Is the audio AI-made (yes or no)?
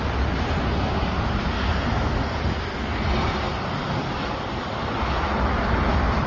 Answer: no